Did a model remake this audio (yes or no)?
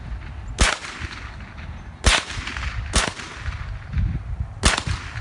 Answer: no